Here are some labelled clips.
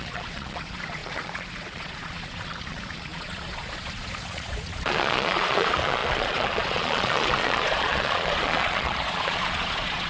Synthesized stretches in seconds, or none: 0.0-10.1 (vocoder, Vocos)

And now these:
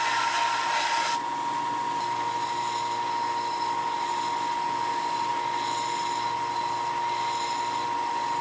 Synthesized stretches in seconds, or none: none

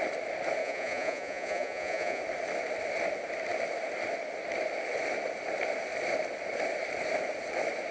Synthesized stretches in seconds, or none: 0.6-2.2 (vocoder, Vocos)

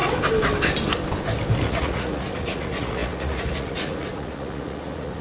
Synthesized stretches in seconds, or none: 1.7-5.2 (vocoder, Vocos)